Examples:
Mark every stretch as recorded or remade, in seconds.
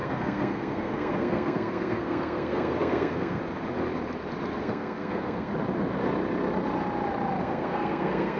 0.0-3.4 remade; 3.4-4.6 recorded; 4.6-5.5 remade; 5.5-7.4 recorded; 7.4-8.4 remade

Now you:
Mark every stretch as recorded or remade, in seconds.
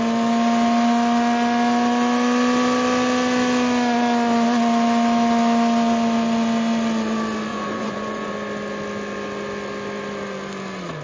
0.0-7.5 recorded; 7.5-8.3 remade; 8.3-11.0 recorded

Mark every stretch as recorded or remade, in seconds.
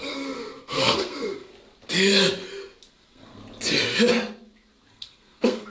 0.0-1.5 remade; 1.5-2.9 recorded; 2.9-3.4 remade; 3.4-4.9 recorded; 4.9-5.7 remade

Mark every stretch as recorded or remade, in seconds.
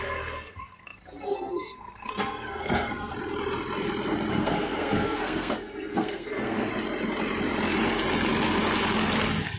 0.0-3.1 remade; 3.1-4.3 recorded; 4.3-6.7 remade; 6.7-9.6 recorded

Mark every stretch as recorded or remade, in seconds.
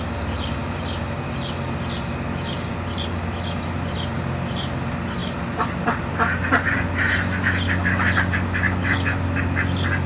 0.0-10.1 recorded